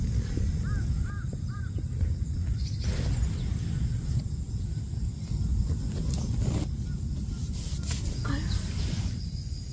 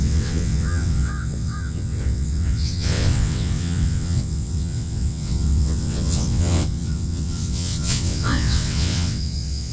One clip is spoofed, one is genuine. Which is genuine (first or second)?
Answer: first